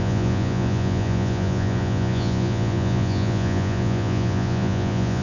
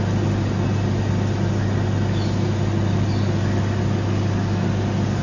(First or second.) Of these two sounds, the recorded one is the second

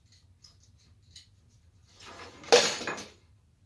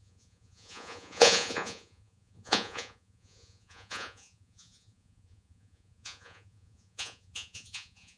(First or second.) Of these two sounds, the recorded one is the first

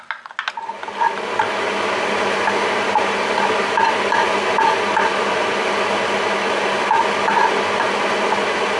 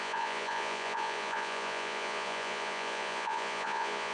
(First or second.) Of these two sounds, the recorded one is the first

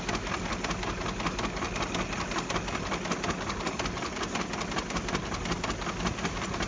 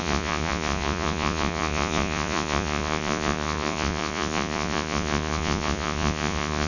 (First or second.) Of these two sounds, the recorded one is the first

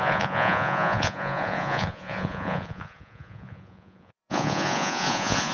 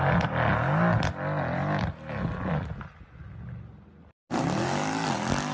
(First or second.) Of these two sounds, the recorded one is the second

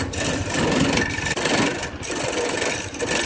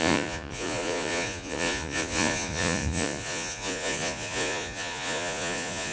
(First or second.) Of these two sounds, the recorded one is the first